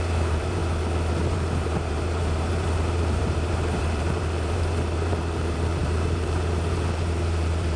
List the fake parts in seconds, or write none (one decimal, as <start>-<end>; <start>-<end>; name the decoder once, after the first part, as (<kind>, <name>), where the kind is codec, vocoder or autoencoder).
0.0-0.6 (vocoder, BigVGAN v2); 1.3-7.8